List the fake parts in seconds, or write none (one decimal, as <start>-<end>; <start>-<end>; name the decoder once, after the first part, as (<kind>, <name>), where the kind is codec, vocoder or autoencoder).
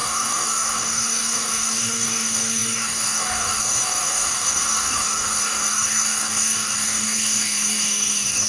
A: 0.0-8.5 (codec, DAC)